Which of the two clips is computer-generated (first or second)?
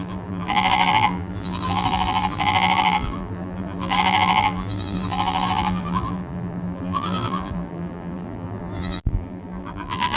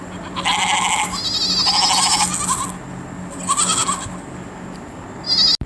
first